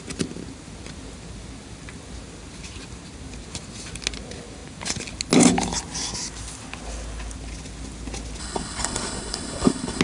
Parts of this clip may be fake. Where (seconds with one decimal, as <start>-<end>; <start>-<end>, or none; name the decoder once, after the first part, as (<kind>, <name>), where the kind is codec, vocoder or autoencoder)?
8.4-10.0 (codec, HILCodec)